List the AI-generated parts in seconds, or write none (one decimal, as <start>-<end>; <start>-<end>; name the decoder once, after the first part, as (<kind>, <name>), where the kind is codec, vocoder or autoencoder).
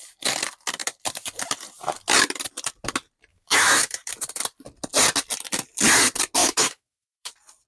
3.3-4.1 (autoencoder, DAC-VAE); 6.4-7.3